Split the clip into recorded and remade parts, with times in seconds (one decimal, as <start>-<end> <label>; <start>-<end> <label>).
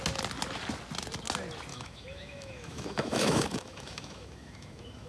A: 0.0-1.7 recorded; 1.7-5.1 remade